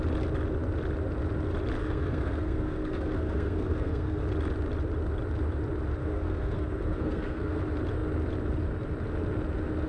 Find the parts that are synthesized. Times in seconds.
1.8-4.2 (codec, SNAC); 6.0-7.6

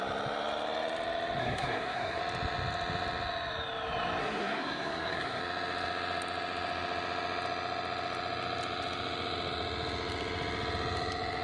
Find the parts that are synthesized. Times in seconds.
1.4-2.2 (codec, SNAC); 4.2-5.4